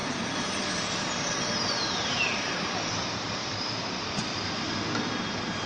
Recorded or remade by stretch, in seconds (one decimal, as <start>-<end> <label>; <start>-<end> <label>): 0.0-2.9 remade; 2.9-3.4 recorded; 3.4-4.7 remade; 4.7-5.7 recorded